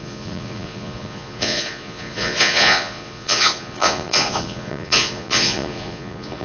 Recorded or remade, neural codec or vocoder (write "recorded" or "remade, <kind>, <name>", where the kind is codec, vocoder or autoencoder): remade, vocoder, Vocos